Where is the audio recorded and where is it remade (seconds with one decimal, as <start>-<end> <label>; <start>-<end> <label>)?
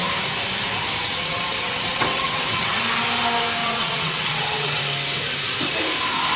0.0-1.0 recorded; 1.0-2.8 remade; 2.8-3.6 recorded; 3.6-4.8 remade; 4.8-6.4 recorded